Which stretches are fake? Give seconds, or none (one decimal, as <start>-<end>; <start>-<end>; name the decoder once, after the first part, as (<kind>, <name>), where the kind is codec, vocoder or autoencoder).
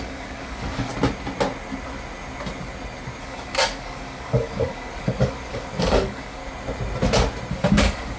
0.0-0.9 (codec, DAC); 3.2-6.4; 7.5-8.2